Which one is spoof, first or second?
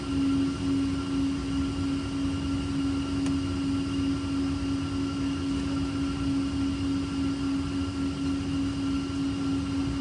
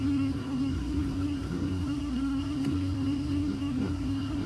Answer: second